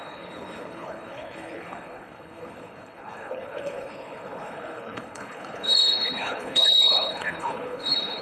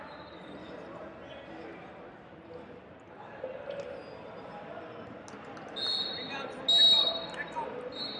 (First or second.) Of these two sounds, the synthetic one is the first